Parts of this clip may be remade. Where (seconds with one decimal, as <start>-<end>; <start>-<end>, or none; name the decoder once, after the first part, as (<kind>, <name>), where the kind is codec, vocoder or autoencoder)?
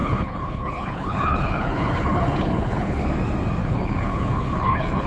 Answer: 0.0-3.1 (codec, HILCodec); 3.6-5.1